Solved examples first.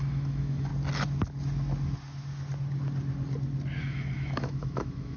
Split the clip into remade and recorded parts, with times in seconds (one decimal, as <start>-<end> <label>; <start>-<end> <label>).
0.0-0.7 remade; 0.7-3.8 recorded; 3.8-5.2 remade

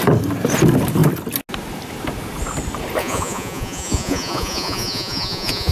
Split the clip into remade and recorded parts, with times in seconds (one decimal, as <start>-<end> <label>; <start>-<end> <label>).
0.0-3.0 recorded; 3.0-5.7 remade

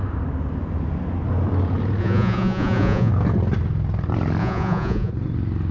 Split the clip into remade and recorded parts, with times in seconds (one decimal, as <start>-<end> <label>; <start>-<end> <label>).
0.0-2.0 recorded; 2.0-3.1 remade; 3.1-4.4 recorded; 4.4-5.1 remade; 5.1-5.7 recorded